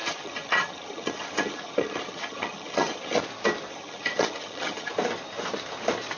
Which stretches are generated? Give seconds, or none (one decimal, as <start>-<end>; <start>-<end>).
0.0-3.2; 3.7-4.9